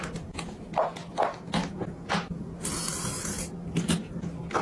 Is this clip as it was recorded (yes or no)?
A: yes